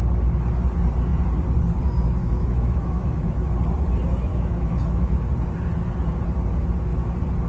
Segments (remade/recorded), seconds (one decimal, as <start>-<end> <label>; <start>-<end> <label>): 0.0-2.2 recorded; 2.2-3.5 remade; 3.5-4.3 recorded; 4.3-5.3 remade; 5.3-7.5 recorded